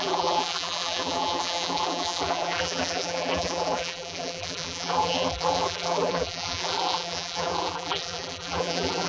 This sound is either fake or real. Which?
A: fake